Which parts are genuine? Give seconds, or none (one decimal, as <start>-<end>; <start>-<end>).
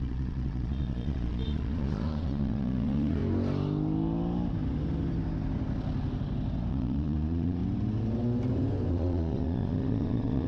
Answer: 3.2-6.7; 7.6-8.9